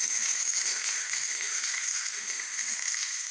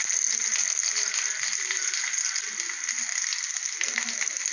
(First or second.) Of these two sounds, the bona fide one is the second